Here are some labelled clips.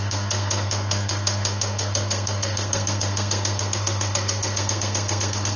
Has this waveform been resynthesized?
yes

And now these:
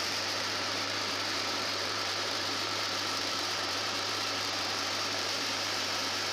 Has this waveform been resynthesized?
yes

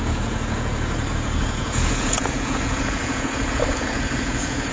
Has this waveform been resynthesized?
yes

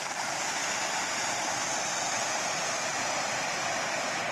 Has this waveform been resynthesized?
yes